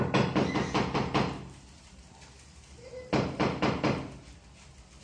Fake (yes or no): no